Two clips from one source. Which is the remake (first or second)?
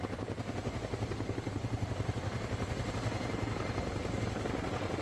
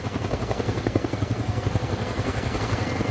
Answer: second